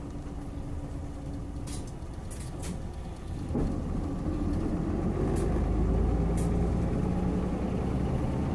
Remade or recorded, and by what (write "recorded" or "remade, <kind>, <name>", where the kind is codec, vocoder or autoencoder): recorded